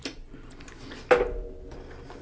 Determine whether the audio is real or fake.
real